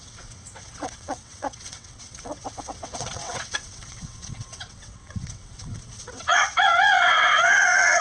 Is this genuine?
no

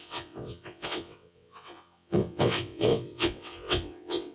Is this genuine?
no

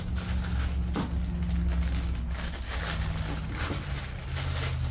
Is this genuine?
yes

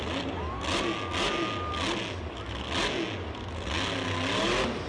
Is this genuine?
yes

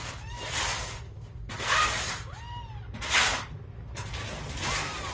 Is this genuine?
yes